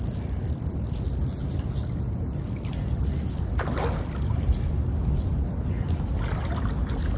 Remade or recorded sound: recorded